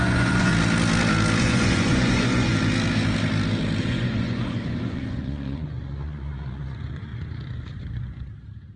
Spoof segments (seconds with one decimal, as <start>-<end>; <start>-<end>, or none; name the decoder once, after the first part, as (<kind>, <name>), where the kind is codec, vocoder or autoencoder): 0.0-0.5 (vocoder, Vocos); 1.4-2.5; 3.8-7.1